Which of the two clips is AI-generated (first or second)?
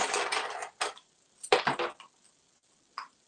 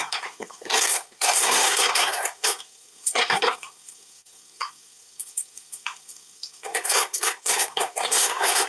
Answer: second